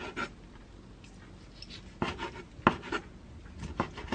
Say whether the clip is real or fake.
real